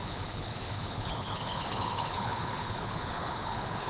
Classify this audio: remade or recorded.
remade